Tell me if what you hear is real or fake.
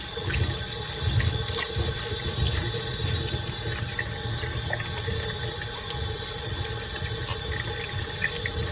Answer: real